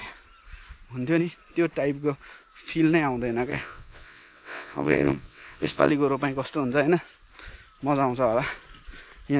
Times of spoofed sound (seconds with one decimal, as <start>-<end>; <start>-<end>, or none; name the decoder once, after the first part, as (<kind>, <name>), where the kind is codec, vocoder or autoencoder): 3.5-5.9 (vocoder, WaveNeXt)